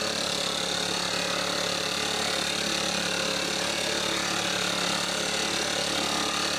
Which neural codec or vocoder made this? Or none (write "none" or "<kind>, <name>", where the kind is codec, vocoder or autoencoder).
none